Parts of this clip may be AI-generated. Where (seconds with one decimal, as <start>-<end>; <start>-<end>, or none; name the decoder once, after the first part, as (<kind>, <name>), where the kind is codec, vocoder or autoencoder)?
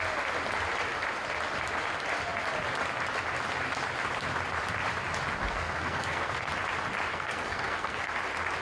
5.4-6.5 (codec, SNAC); 7.1-8.1